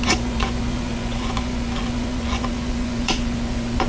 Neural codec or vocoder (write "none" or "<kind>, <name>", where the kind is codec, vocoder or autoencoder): vocoder, Vocos